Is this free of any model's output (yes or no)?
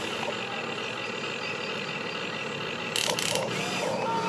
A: yes